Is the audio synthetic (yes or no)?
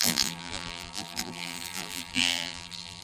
yes